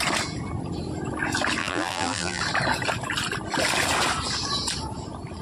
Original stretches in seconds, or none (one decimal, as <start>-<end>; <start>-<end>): 0.0-1.6; 2.4-5.4